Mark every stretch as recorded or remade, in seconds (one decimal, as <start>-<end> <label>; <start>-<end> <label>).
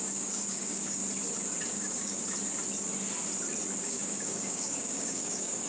0.0-1.0 remade; 1.0-1.7 recorded; 1.7-2.2 remade; 2.2-3.8 recorded; 3.8-5.7 remade